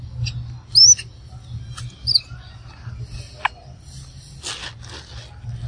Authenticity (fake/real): real